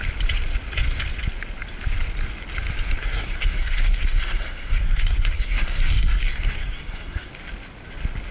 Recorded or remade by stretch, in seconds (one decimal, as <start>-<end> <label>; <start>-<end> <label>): 0.0-3.0 recorded; 3.0-7.3 remade; 7.3-8.3 recorded

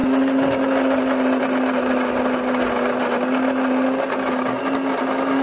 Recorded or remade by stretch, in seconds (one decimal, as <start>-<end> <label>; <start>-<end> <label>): 0.0-5.4 recorded

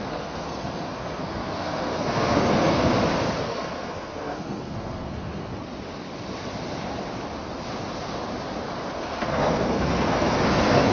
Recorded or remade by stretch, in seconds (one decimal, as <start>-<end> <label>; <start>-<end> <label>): 0.0-2.9 remade; 2.9-3.4 recorded; 3.4-5.5 remade; 5.5-8.9 recorded; 8.9-10.9 remade

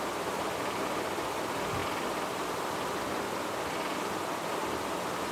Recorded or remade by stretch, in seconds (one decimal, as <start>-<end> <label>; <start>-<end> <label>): 0.0-5.3 recorded